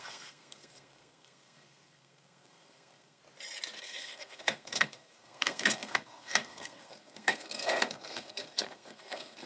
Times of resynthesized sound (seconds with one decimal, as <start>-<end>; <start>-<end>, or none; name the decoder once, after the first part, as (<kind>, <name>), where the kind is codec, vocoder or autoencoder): 0.0-3.2 (codec, SNAC); 3.8-9.5